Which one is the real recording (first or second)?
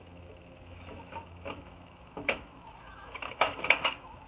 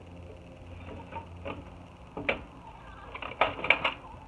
second